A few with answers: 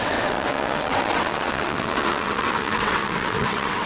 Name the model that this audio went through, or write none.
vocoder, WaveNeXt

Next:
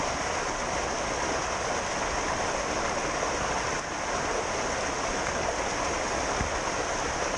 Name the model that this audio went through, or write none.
none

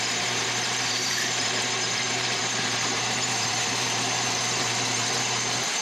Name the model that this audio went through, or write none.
vocoder, BigVGAN v2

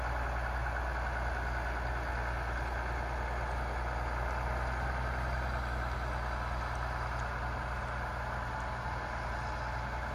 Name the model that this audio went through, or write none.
none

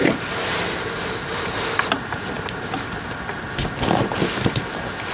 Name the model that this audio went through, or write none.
none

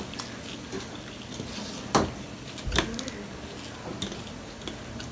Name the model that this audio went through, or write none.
none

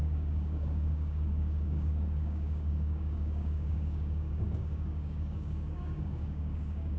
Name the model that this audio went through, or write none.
codec, DAC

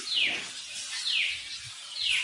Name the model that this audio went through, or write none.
none